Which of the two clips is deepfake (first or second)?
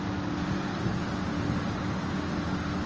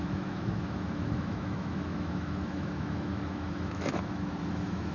second